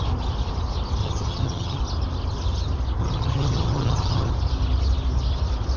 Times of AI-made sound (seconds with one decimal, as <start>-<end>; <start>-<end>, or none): 1.0-1.8; 3.0-4.3